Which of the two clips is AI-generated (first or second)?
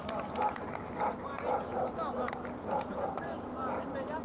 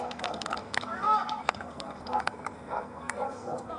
second